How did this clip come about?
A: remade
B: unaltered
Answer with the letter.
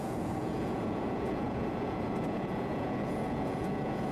A